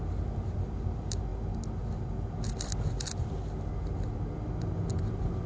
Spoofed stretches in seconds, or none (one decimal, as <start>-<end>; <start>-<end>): none